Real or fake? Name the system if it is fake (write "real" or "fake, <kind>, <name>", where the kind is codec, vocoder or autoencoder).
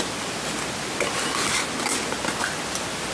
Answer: real